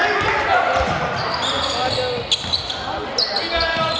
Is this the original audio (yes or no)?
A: yes